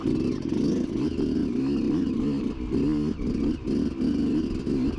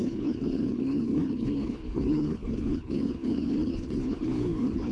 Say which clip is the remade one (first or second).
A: second